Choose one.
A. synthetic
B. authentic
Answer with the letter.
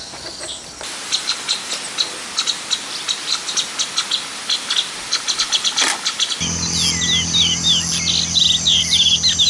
B